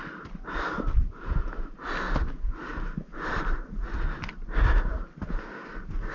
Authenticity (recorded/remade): recorded